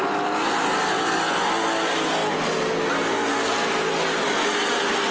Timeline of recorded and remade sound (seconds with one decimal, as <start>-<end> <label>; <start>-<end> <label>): 0.0-5.1 recorded